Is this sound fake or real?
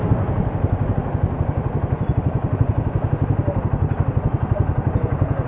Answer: real